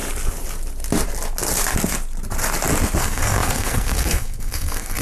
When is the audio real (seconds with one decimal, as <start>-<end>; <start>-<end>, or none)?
0.0-3.0